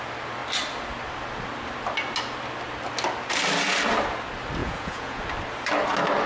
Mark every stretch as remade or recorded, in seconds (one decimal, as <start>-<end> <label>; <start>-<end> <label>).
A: 0.0-4.6 recorded; 4.6-5.2 remade; 5.2-6.3 recorded